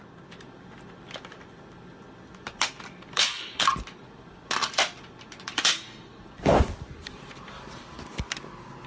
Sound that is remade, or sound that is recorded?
remade